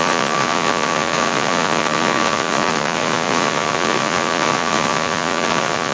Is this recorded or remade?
remade